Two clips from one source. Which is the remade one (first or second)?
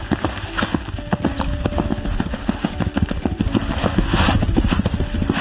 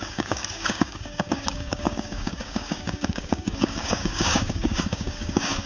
second